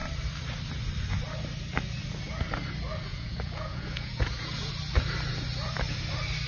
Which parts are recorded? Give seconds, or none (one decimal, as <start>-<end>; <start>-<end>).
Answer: 0.0-3.1; 4.7-6.5